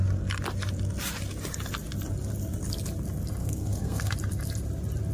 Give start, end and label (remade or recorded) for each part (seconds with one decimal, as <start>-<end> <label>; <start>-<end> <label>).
0.0-3.4 recorded; 3.4-4.1 remade; 4.1-5.1 recorded